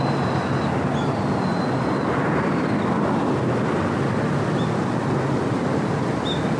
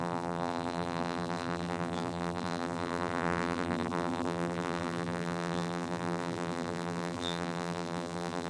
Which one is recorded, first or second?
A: first